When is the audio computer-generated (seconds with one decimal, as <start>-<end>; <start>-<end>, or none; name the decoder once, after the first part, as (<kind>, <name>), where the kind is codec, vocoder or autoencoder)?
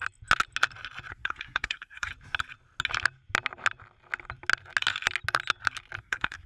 1.1-2.1 (codec, SNAC); 6.0-6.5